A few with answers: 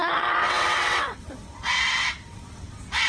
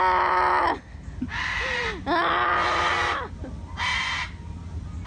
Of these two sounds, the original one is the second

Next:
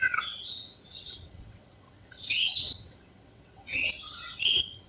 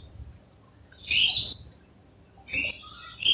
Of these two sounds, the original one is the second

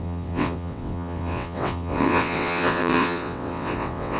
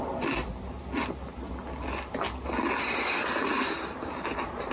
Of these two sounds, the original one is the second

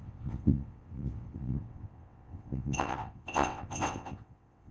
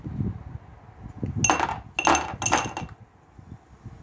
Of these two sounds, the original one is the second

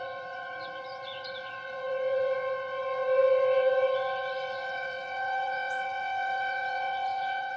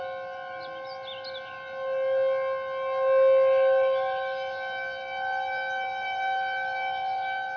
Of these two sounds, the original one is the second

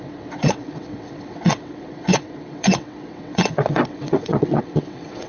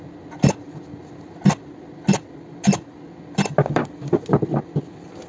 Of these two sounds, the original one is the second